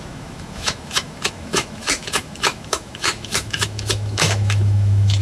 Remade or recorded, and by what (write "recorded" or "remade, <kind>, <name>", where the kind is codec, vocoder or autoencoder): remade, autoencoder, DAC-VAE